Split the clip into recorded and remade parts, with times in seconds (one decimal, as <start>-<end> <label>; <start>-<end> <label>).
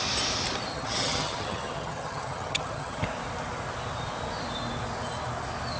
0.0-0.7 recorded; 0.7-3.0 remade; 3.0-5.8 recorded